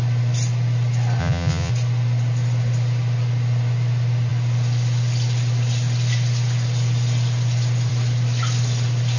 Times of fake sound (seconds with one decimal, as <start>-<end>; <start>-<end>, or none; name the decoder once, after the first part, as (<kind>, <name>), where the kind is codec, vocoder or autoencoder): 1.2-1.7 (vocoder, Vocos)